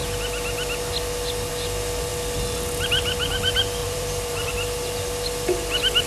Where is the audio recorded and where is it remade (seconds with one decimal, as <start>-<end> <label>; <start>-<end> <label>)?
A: 0.0-3.8 recorded; 3.8-4.5 remade; 4.5-6.1 recorded